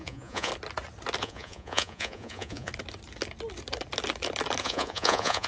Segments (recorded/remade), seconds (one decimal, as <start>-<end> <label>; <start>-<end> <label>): 0.0-0.5 remade; 0.5-1.2 recorded; 1.2-2.7 remade; 2.7-4.6 recorded; 4.6-5.5 remade